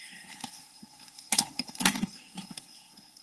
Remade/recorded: remade